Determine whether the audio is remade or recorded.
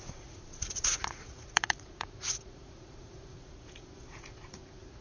remade